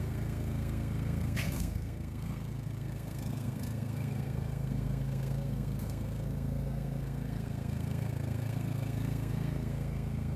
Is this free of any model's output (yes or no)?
no